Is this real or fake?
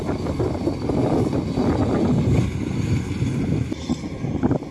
real